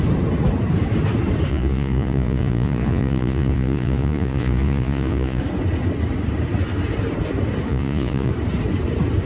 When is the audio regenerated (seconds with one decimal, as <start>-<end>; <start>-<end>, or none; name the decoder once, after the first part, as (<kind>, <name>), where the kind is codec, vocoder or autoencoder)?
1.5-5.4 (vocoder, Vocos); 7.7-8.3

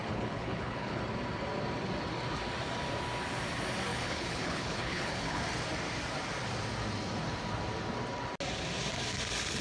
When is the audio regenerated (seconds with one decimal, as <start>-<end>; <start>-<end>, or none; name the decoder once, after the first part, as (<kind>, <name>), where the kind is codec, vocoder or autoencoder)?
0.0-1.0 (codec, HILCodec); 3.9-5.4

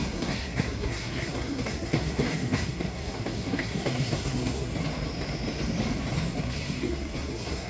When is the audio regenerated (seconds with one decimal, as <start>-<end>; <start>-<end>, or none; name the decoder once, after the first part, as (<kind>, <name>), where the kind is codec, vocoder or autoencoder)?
0.0-4.7 (codec, SNAC); 6.3-7.7